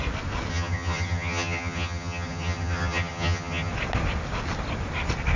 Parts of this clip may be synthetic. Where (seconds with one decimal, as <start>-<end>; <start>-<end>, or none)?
0.5-3.7